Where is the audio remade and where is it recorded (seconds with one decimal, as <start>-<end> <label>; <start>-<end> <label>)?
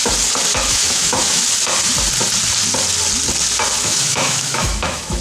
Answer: 0.0-0.7 recorded; 0.7-1.4 remade; 1.4-3.8 recorded; 3.8-5.2 remade